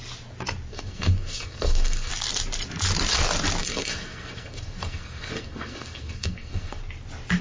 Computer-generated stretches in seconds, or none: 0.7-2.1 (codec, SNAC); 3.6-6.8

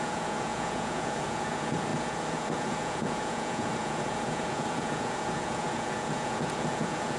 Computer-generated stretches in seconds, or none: 0.0-7.2 (vocoder, Vocos)

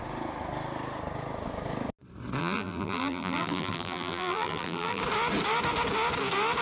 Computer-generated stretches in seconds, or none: 2.4-5.0 (vocoder, BigVGAN v2)